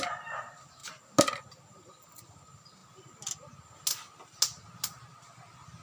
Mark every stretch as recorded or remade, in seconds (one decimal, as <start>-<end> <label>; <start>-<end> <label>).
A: 0.0-5.8 recorded